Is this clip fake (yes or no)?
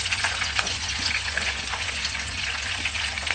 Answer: yes